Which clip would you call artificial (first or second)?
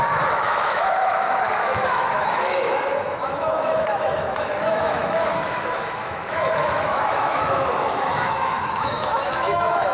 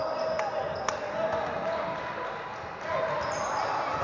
first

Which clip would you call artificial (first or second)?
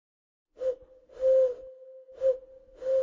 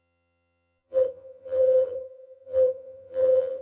second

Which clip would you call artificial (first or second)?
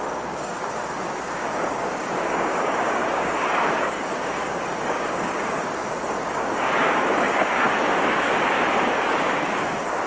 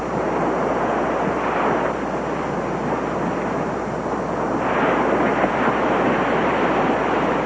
first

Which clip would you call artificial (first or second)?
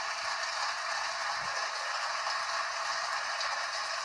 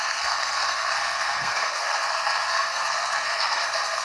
second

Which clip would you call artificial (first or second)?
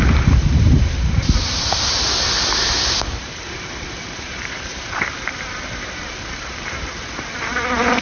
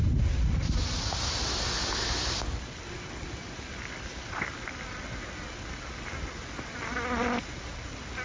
first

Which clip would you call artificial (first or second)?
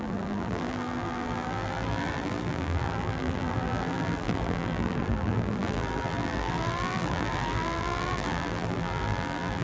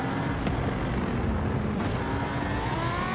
first